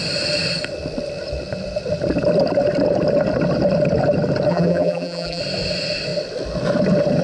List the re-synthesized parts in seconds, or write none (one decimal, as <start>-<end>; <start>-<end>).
4.5-5.4